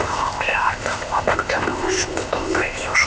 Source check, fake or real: fake